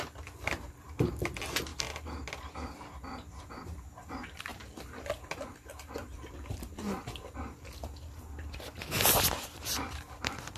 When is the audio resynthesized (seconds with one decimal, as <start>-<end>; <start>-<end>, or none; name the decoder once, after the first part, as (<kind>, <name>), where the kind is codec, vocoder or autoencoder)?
none